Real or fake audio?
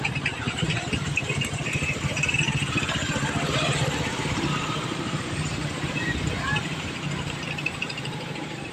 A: fake